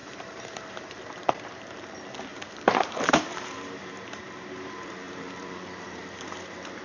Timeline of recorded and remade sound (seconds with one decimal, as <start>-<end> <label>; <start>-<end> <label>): 0.0-1.1 remade; 1.1-2.3 recorded; 2.3-6.8 remade